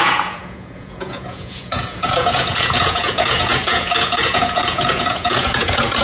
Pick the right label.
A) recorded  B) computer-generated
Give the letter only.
B